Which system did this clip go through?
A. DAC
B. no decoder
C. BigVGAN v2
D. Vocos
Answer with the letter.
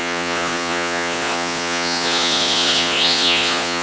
D